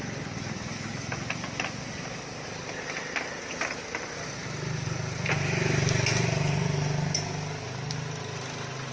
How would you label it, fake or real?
real